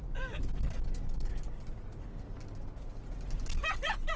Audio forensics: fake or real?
real